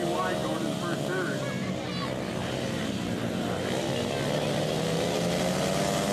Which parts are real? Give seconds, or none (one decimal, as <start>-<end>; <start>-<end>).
0.0-6.1